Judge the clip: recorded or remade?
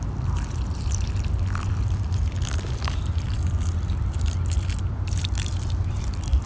remade